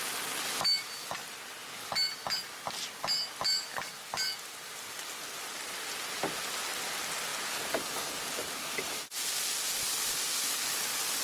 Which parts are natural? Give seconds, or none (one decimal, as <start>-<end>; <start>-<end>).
0.0-11.2